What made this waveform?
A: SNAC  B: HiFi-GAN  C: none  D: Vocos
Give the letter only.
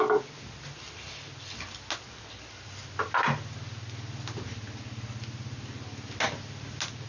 C